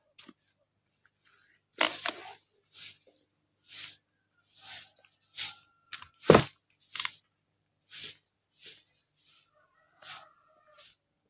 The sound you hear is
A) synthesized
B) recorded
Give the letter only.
B